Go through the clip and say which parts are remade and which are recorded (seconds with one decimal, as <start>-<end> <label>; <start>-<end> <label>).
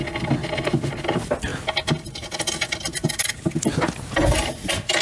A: 0.0-5.0 recorded